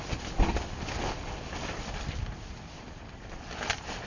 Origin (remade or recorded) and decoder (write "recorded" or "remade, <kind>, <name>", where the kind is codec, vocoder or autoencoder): recorded